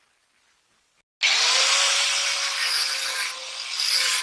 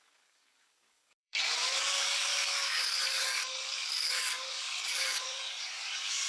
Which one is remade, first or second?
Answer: second